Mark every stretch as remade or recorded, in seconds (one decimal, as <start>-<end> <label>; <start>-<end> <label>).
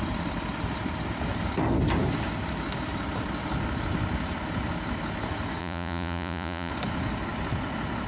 0.0-5.6 recorded; 5.6-6.7 remade; 6.7-8.1 recorded